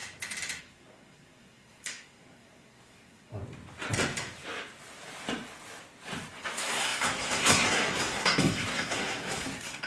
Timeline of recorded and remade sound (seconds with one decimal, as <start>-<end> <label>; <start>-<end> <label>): 0.0-0.6 recorded; 0.6-3.4 remade; 3.4-6.3 recorded; 6.3-9.9 remade